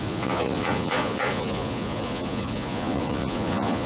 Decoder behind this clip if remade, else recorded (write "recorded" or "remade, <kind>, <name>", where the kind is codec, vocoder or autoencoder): remade, vocoder, Vocos